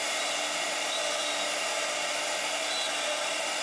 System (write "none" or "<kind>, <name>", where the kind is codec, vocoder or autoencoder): none